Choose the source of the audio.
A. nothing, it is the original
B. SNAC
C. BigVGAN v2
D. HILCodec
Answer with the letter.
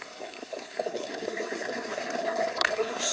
B